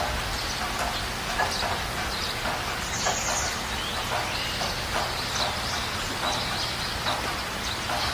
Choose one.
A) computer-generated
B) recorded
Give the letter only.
B